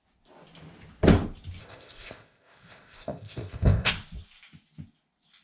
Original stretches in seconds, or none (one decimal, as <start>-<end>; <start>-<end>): 0.0-1.6; 3.9-5.4